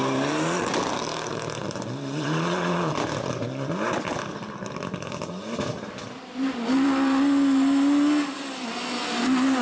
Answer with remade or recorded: recorded